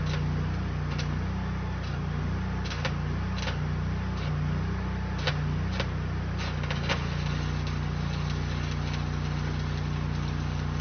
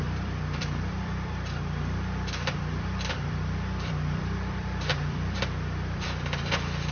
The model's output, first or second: second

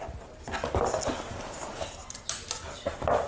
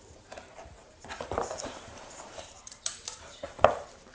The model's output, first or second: second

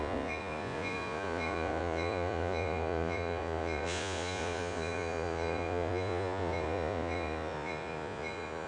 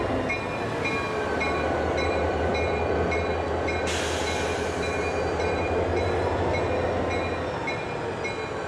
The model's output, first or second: first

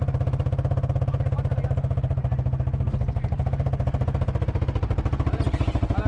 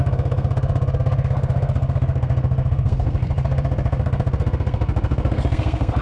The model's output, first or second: second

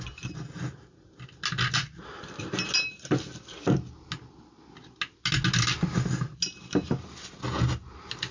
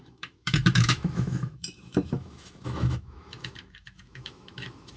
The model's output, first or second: second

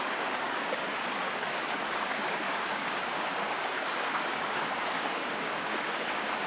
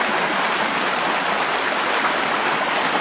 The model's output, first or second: first